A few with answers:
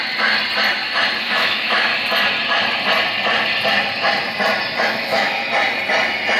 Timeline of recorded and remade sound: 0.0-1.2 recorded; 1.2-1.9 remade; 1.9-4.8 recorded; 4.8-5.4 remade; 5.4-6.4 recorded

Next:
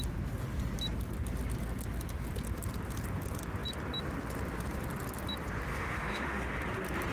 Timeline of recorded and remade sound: 0.0-5.7 recorded; 5.7-6.5 remade; 6.5-7.1 recorded

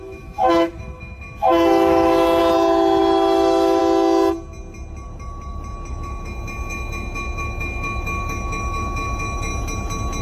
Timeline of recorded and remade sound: 0.0-2.4 remade; 2.4-3.0 recorded; 3.0-3.8 remade; 3.8-5.9 recorded; 5.9-9.5 remade; 9.5-10.2 recorded

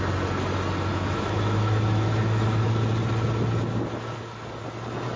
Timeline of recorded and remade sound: 0.0-0.9 recorded; 0.9-2.7 remade; 2.7-5.2 recorded

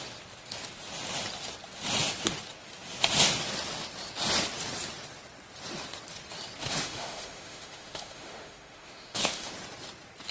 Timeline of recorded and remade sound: 0.0-6.6 recorded; 6.6-9.5 remade; 9.5-10.3 recorded

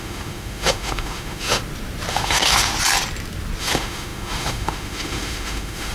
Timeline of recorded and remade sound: 0.0-1.6 remade; 1.6-2.1 recorded; 2.1-2.7 remade; 2.7-3.6 recorded; 3.6-5.9 remade

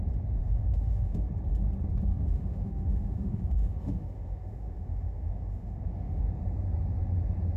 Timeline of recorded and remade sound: 0.0-0.4 recorded; 0.4-1.3 remade; 1.3-2.1 recorded; 2.1-6.2 remade; 6.2-7.6 recorded

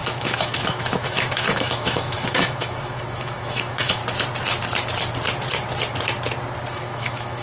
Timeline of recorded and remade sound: 0.0-4.0 remade; 4.0-6.7 recorded; 6.7-7.4 remade